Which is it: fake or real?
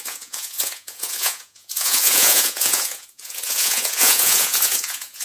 fake